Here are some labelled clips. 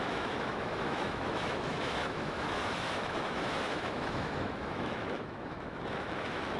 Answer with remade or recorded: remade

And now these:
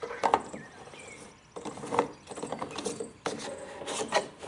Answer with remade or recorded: recorded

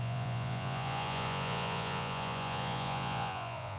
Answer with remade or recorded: remade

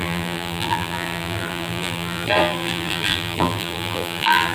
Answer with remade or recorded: remade